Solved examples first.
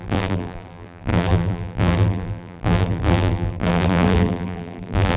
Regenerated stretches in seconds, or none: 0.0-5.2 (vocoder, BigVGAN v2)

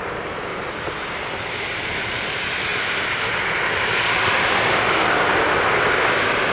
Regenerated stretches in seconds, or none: 0.5-1.8 (vocoder, BigVGAN v2)

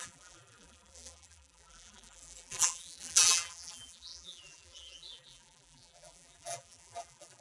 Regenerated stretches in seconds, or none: 0.0-7.4 (vocoder, BigVGAN v2)

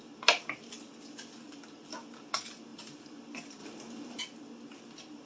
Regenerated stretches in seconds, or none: 2.7-3.2 (vocoder, BigVGAN v2); 3.6-4.2

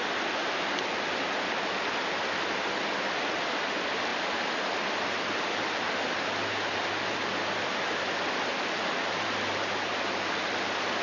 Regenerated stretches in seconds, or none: none